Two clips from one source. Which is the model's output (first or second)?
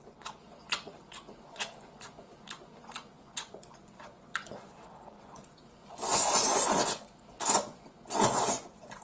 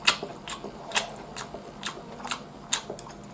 first